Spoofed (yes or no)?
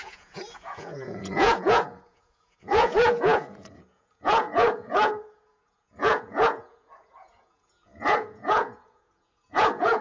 yes